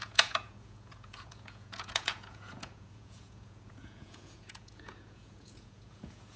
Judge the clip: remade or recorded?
remade